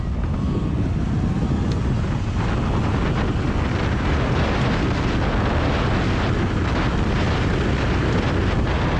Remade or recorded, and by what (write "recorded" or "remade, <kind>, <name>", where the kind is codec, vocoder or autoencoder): recorded